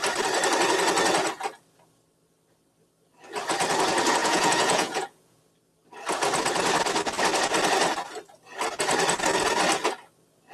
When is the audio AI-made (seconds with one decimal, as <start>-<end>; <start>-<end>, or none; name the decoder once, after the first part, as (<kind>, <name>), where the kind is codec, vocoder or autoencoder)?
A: 4.2-5.4 (vocoder, Vocos)